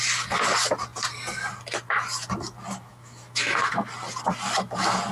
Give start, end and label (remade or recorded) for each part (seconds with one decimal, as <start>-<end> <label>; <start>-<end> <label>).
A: 0.0-2.9 recorded; 2.9-3.7 remade; 3.7-5.1 recorded